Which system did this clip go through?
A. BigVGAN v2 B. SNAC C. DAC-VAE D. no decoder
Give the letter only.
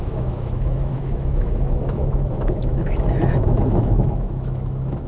C